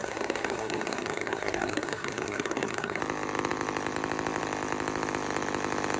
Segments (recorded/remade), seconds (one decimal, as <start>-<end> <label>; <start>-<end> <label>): 0.0-3.0 remade; 3.0-6.0 recorded